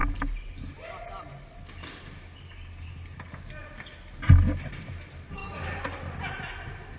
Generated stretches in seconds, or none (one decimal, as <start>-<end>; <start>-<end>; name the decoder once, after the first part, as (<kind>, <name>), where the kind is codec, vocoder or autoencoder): none